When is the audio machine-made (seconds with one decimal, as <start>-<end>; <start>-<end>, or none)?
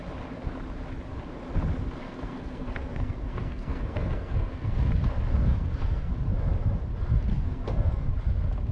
2.0-4.9; 5.4-6.1; 7.3-8.1